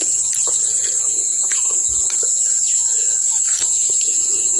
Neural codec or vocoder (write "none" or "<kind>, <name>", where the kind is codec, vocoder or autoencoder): vocoder, Vocos